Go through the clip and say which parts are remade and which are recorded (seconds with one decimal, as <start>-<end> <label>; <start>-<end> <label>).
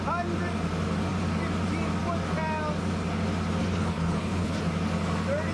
0.0-3.6 recorded; 3.6-4.6 remade; 4.6-5.5 recorded